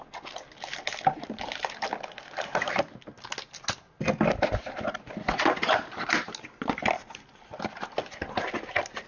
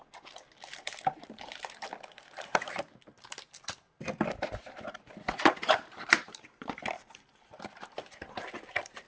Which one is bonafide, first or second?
first